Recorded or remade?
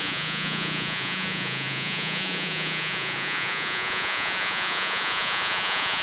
remade